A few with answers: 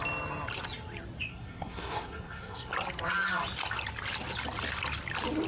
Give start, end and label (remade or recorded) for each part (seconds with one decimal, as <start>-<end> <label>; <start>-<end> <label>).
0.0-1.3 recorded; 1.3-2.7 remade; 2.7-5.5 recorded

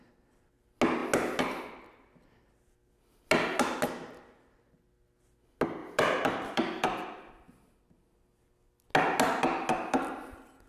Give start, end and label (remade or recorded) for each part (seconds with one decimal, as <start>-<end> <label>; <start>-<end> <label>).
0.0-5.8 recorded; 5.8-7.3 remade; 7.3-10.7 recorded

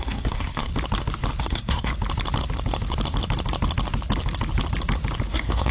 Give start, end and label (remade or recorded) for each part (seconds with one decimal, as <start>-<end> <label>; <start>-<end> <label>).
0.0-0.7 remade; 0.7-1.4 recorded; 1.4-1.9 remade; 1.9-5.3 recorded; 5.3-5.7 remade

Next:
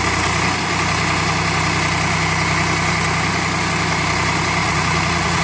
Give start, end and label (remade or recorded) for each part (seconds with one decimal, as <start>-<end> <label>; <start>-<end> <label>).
0.0-4.6 recorded; 4.6-5.4 remade

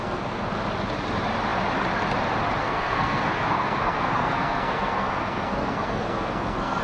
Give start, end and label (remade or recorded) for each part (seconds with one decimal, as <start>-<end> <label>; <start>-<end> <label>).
0.0-0.5 remade; 0.5-2.6 recorded; 2.6-6.8 remade